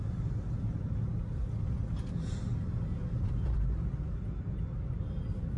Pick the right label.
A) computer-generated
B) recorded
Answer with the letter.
B